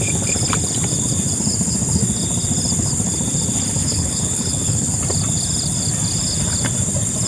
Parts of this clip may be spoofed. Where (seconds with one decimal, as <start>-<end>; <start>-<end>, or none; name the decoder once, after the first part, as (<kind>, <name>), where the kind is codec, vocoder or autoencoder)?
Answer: 3.8-4.9 (codec, HILCodec)